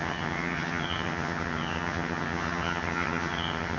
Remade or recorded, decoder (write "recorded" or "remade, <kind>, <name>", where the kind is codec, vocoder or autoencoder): remade, vocoder, HiFi-GAN